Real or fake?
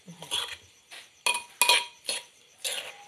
real